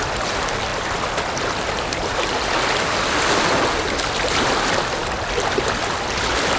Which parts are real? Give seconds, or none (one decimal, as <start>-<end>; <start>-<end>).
0.0-6.6